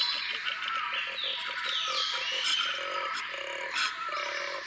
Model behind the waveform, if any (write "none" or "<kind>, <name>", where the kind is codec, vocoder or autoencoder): none